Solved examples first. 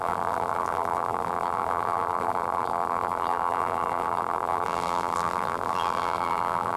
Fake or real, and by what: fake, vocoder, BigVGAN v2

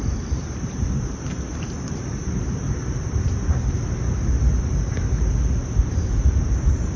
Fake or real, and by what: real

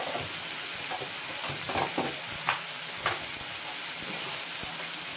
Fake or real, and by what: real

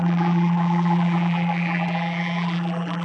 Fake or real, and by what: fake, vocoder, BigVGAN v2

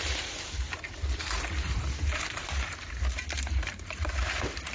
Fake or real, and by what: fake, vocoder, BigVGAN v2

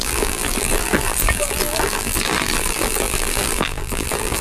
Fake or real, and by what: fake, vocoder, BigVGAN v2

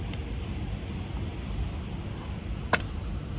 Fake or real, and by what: real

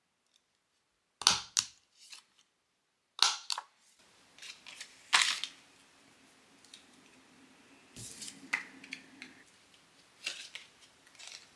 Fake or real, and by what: real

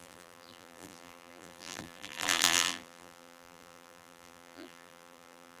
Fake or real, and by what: fake, vocoder, BigVGAN v2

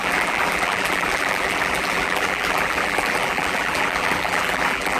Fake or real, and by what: fake, vocoder, BigVGAN v2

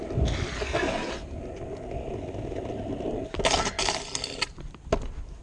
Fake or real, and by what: real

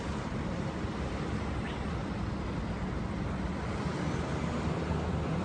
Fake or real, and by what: fake, vocoder, BigVGAN v2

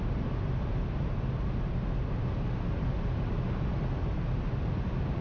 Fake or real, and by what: real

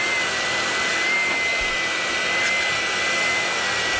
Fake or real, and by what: real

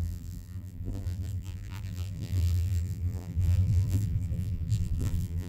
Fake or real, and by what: fake, vocoder, BigVGAN v2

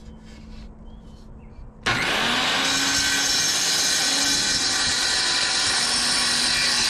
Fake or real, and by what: real